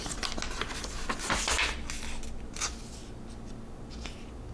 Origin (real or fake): real